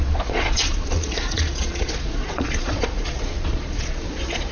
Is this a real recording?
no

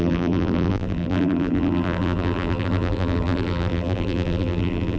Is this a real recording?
no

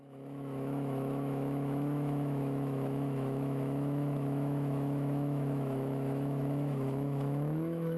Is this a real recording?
no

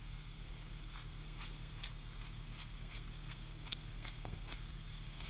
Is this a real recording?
no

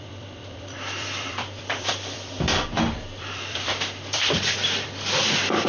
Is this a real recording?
no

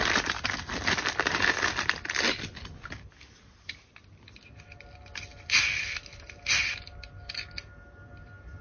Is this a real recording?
yes